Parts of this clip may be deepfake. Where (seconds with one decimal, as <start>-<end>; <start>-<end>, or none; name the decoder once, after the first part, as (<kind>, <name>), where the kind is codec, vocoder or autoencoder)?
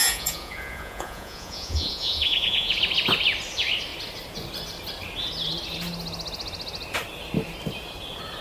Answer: 0.0-2.8 (vocoder, Vocos)